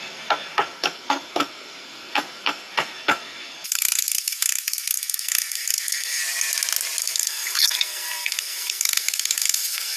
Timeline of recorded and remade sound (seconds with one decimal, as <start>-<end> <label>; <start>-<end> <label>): 0.0-6.2 remade; 6.2-7.0 recorded; 7.0-10.0 remade